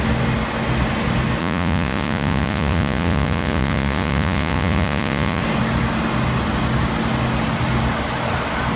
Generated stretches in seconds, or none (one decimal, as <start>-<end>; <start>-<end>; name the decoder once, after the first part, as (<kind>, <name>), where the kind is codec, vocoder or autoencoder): 1.4-5.4 (vocoder, Vocos)